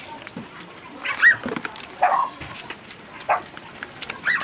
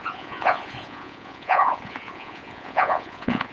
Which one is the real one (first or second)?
first